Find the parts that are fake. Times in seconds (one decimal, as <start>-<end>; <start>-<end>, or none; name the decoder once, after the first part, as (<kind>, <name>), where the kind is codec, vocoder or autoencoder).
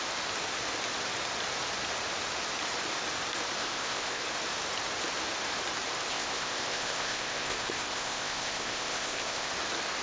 3.6-4.2 (codec, ZipCodec); 6.1-9.5